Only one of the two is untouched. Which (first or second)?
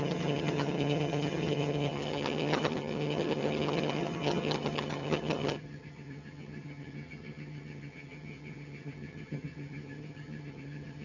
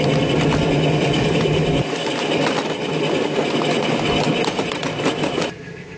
second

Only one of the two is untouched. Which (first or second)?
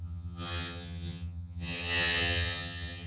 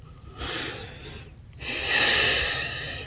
second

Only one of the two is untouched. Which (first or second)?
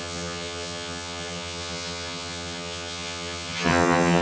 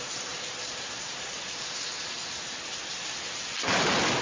second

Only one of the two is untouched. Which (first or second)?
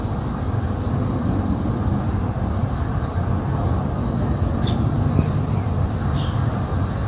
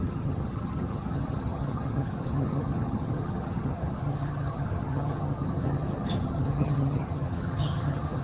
first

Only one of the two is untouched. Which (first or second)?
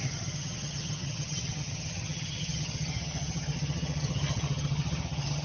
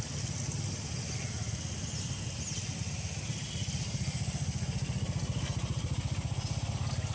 second